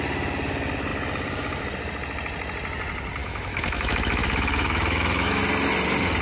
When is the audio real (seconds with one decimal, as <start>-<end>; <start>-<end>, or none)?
0.0-3.2; 5.4-6.2